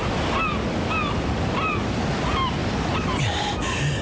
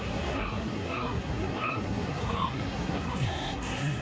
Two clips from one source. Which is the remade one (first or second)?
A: second